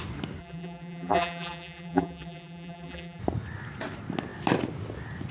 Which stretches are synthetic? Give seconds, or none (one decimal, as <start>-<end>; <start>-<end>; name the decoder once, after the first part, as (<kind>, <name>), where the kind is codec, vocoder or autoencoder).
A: 0.4-3.2 (vocoder, BigVGAN v2)